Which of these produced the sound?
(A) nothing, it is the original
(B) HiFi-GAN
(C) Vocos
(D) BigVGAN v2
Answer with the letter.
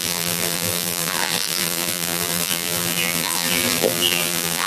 D